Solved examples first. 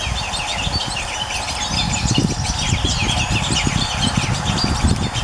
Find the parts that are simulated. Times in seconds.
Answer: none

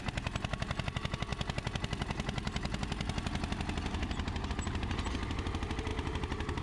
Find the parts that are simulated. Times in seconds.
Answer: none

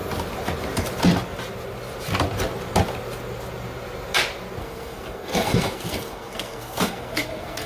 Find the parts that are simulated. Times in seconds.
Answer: 4.6-7.7 (codec, SNAC)

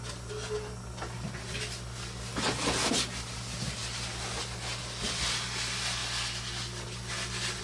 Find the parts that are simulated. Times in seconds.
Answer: none

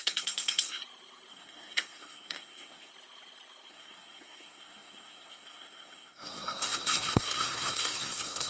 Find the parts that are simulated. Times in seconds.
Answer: 0.0-0.8 (codec, SNAC); 1.3-2.9; 3.7-8.5

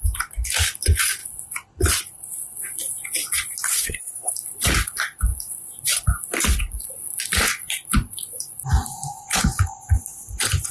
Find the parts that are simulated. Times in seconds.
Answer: 3.7-4.3 (codec, SNAC)